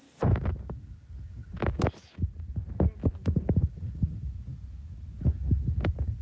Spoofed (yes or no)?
no